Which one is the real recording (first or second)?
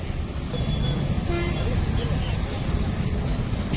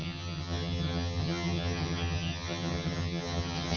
first